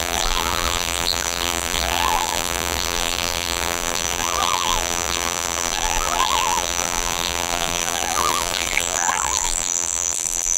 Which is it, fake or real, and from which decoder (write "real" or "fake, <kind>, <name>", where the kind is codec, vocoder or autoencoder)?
fake, vocoder, BigVGAN v2